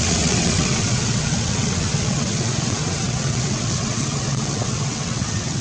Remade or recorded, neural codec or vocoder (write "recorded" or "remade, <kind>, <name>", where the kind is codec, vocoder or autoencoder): remade, vocoder, WaveNeXt